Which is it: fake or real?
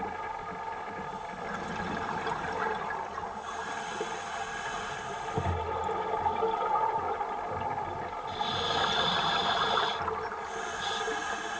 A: real